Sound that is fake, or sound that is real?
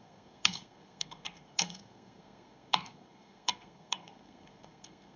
fake